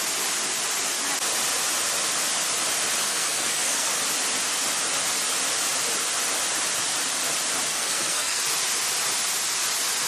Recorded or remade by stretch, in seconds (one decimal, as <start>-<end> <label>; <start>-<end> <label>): 0.0-3.0 recorded; 3.0-3.9 remade; 3.9-7.7 recorded; 7.7-8.4 remade; 8.4-10.1 recorded